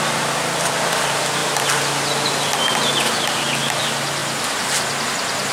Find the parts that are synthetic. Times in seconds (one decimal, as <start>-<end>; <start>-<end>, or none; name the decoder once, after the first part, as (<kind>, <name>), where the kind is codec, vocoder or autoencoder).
none